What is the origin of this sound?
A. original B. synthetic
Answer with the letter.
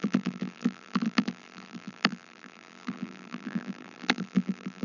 B